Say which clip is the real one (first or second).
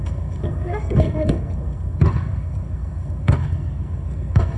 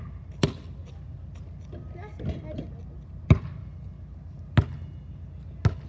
second